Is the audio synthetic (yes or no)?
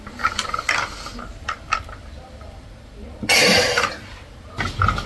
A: no